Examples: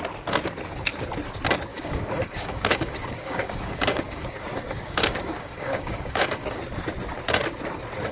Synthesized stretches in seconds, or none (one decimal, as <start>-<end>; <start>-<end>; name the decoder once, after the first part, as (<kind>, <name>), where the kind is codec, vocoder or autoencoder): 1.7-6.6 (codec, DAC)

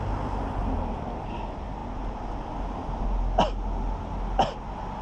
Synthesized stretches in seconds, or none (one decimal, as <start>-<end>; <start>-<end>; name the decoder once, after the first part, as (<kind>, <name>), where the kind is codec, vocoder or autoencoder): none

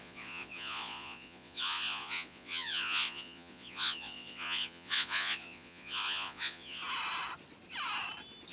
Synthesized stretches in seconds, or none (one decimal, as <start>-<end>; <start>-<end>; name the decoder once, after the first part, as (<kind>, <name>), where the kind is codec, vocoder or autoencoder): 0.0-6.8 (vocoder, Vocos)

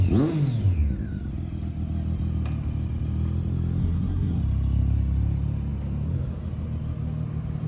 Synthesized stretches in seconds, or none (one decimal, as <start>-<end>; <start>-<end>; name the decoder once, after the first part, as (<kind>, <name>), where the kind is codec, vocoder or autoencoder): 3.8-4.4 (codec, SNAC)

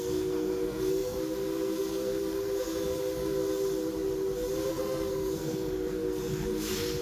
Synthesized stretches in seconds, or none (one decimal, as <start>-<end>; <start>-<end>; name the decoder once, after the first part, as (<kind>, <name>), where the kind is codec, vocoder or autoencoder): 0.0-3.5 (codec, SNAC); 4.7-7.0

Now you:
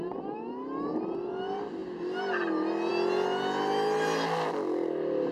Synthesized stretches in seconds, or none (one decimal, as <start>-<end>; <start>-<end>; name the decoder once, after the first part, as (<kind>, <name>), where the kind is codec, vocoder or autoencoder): none

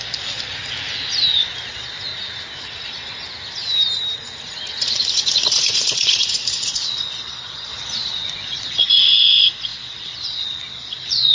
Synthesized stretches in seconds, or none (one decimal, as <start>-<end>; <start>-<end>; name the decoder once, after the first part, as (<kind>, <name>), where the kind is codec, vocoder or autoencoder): 0.0-0.5 (vocoder, Vocos); 1.7-2.1; 4.8-11.3

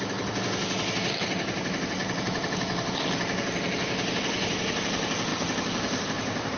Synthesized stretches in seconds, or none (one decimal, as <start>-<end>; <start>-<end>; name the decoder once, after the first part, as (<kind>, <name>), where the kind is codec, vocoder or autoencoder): 5.3-6.6 (vocoder, BigVGAN v2)